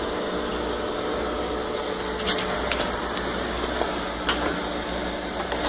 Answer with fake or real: fake